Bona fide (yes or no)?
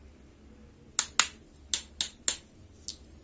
yes